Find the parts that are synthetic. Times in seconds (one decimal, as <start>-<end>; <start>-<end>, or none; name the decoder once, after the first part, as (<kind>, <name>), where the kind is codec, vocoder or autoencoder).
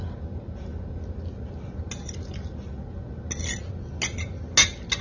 none